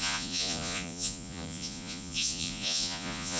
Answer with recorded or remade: remade